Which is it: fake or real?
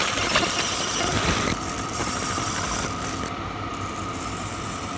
fake